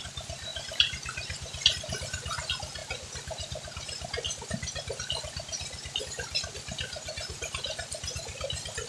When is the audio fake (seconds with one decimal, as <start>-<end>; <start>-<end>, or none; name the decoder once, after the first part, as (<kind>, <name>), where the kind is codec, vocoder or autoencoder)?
0.5-1.7 (vocoder, BigVGAN v2)